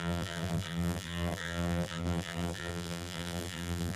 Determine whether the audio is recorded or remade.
remade